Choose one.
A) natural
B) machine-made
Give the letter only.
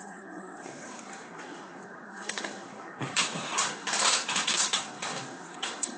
B